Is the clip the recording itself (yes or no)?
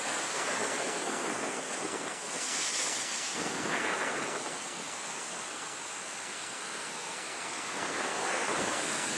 no